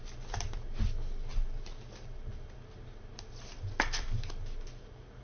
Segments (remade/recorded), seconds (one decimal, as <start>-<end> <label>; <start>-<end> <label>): 0.0-5.2 recorded